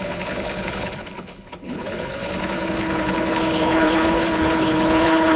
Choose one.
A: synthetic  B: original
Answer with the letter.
A